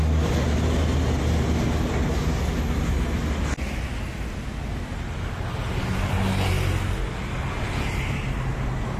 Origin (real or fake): real